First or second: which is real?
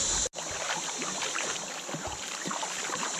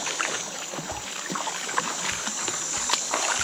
first